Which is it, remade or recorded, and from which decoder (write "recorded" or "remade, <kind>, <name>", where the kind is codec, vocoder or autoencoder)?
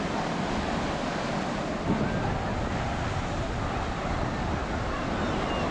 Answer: recorded